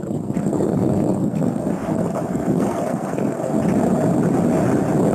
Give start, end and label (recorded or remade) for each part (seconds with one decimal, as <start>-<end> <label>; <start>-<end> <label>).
0.0-3.5 remade; 3.5-5.1 recorded